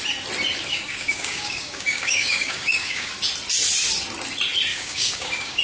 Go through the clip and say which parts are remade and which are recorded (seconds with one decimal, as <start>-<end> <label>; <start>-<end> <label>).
0.0-0.7 recorded; 0.7-3.1 remade; 3.1-4.7 recorded; 4.7-5.6 remade